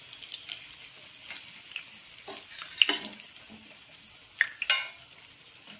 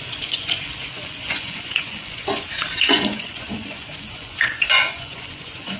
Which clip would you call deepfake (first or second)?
second